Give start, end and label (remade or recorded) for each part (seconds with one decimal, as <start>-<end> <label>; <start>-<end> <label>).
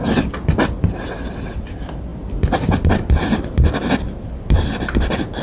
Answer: 0.0-5.4 recorded